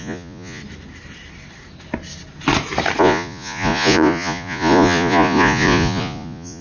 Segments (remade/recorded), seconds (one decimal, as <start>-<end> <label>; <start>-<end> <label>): 0.0-0.6 remade; 0.6-3.0 recorded; 3.0-6.6 remade